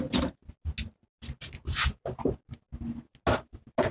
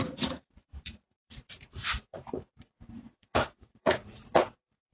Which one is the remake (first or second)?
second